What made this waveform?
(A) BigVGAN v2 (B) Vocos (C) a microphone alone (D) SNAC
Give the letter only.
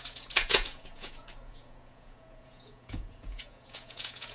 B